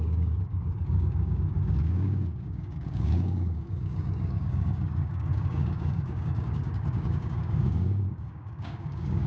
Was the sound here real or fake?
fake